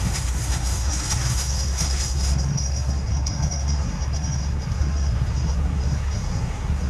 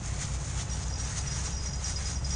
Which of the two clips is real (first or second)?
second